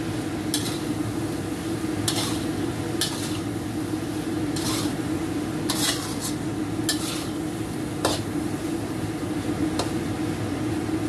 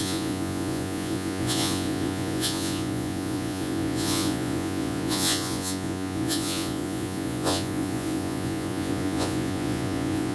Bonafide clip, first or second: first